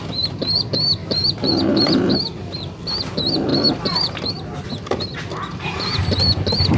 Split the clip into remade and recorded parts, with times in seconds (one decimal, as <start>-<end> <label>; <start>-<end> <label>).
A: 0.0-1.0 recorded; 1.0-1.6 remade; 1.6-6.8 recorded